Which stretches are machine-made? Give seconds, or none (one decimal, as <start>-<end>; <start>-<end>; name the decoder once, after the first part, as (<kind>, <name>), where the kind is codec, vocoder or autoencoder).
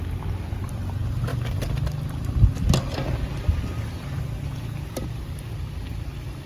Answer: none